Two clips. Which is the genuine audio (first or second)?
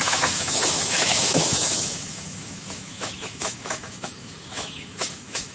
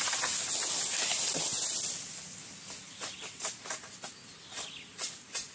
second